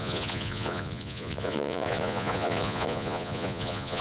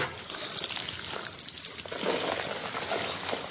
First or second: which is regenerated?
first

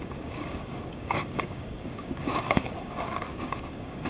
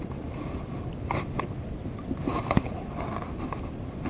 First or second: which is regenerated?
first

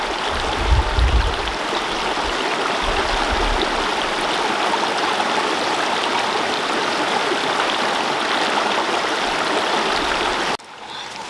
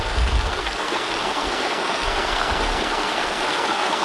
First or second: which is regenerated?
second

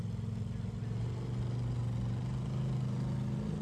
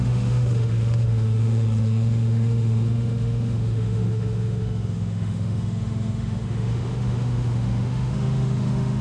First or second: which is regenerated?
second